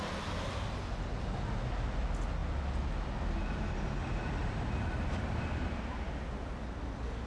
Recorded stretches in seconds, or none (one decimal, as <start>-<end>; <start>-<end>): 0.0-4.4; 4.9-7.3